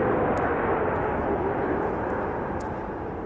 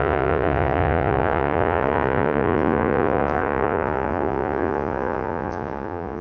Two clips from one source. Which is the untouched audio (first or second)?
first